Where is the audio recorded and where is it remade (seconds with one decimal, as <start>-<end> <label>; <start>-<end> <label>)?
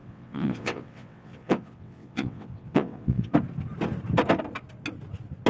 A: 0.0-3.3 remade; 3.3-5.5 recorded